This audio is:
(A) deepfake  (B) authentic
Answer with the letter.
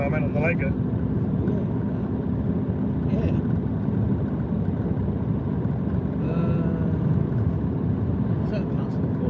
B